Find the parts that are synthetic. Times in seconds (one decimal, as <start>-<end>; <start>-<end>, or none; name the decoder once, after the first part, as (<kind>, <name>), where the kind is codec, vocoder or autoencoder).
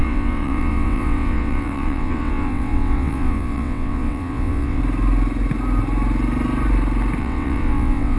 0.0-4.8 (vocoder, WaveNeXt); 7.2-8.2